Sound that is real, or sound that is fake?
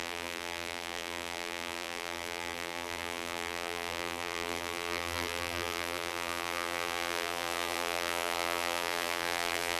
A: fake